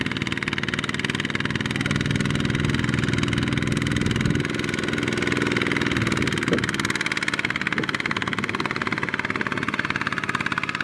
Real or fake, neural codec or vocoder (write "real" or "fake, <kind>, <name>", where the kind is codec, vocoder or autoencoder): real